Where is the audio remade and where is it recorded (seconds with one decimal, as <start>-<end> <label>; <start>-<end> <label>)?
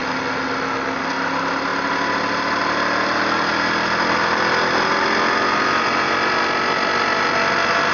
0.0-7.9 recorded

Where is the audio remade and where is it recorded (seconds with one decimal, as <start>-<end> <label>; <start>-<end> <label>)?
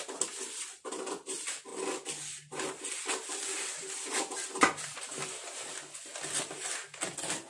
0.0-7.5 recorded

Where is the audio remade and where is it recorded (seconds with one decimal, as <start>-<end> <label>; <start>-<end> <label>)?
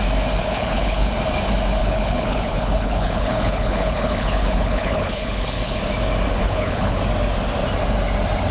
0.0-0.4 recorded; 0.4-1.1 remade; 1.1-1.8 recorded; 1.8-5.8 remade; 5.8-6.4 recorded; 6.4-7.0 remade; 7.0-8.5 recorded